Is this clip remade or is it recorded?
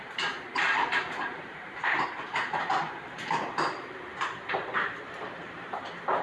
remade